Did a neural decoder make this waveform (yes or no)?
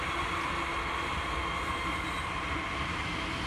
no